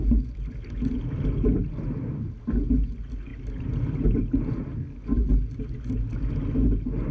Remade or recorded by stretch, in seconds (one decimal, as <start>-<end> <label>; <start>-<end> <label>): 0.0-7.1 recorded